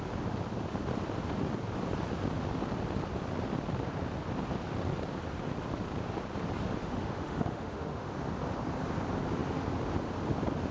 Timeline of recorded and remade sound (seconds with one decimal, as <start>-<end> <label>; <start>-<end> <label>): 0.0-6.8 recorded; 6.8-8.1 remade; 8.1-10.7 recorded